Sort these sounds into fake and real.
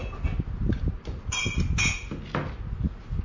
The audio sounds real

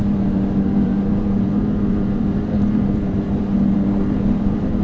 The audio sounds fake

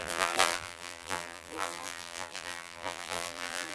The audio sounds fake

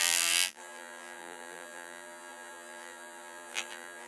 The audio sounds fake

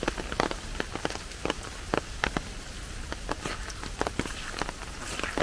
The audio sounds real